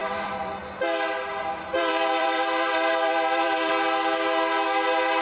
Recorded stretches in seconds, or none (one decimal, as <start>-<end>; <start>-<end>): 0.6-1.7; 3.7-5.2